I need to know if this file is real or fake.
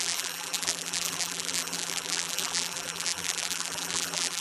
fake